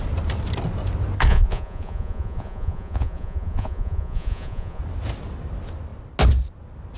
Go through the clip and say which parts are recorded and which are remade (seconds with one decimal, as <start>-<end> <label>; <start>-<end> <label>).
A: 0.0-1.3 recorded; 1.3-4.8 remade; 4.8-7.0 recorded